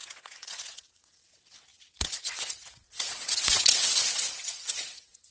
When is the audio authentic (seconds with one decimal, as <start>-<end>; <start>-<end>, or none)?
none